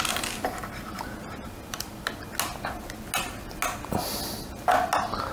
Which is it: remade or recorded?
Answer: recorded